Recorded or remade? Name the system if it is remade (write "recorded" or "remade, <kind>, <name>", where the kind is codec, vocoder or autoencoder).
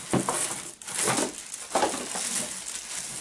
recorded